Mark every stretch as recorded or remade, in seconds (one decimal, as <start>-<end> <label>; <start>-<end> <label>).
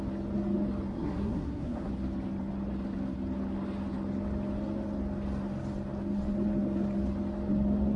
0.0-0.9 recorded; 0.9-1.9 remade; 1.9-8.0 recorded